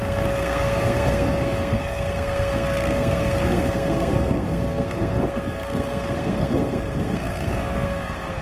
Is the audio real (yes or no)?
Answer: no